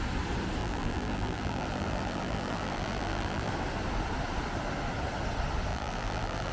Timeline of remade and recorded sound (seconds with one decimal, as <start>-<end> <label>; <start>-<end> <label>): 0.0-0.6 recorded; 0.6-3.5 remade; 3.5-5.7 recorded; 5.7-6.5 remade